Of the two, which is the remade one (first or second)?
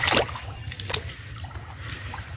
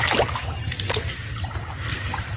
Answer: first